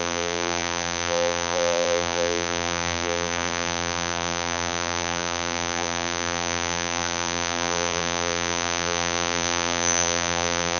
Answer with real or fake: fake